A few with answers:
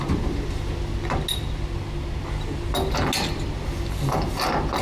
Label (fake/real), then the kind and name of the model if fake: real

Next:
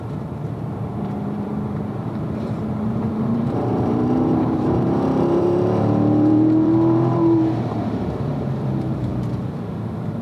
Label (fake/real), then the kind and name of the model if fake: fake, vocoder, BigVGAN v2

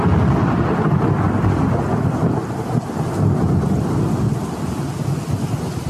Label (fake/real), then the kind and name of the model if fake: real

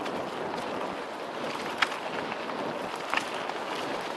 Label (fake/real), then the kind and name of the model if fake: real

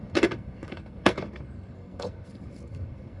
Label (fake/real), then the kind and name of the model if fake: fake, codec, SNAC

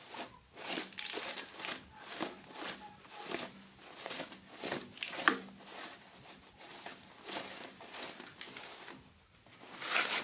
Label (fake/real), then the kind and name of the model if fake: real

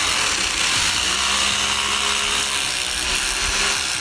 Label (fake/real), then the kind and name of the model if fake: real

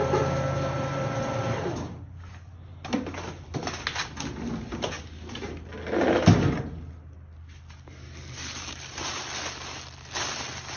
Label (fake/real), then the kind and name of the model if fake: real